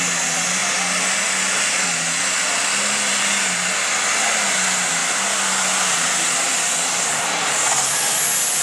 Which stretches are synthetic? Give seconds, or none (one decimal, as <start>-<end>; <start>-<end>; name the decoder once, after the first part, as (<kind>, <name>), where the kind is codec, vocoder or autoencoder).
none